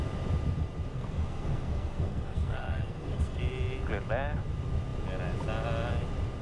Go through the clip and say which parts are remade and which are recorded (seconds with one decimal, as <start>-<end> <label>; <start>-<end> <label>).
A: 0.0-0.9 recorded; 0.9-3.4 remade; 3.4-6.4 recorded